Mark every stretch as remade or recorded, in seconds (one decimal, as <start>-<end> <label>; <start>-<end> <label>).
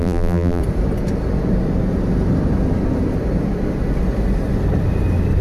0.0-0.6 remade; 0.6-5.4 recorded